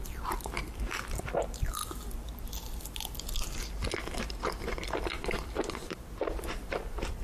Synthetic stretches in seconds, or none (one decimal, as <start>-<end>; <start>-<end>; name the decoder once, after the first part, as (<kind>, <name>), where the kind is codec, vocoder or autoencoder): 0.0-1.8 (vocoder, BigVGAN v2); 4.6-7.2